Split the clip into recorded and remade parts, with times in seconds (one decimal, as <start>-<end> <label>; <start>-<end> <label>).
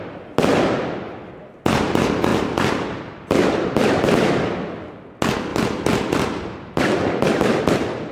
0.0-0.5 recorded; 0.5-1.1 remade; 1.1-2.3 recorded; 2.3-4.9 remade; 4.9-5.5 recorded; 5.5-7.6 remade; 7.6-8.1 recorded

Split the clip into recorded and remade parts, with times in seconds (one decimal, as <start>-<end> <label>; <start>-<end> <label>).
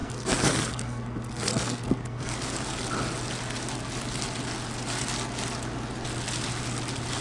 0.0-2.7 remade; 2.7-7.2 recorded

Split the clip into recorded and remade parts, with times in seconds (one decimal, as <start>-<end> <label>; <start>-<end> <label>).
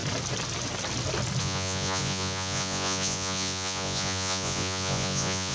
0.0-1.4 recorded; 1.4-5.5 remade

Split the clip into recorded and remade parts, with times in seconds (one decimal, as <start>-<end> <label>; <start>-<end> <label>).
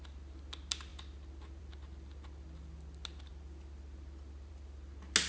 0.0-5.3 recorded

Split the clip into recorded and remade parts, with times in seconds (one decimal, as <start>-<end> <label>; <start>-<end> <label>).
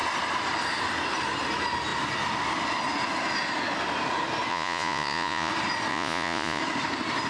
0.0-4.5 recorded; 4.5-5.5 remade; 5.5-5.9 recorded; 5.9-6.6 remade; 6.6-7.3 recorded